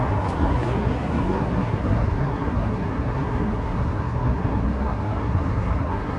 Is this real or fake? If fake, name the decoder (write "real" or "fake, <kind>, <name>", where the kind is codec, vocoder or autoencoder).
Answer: fake, codec, SNAC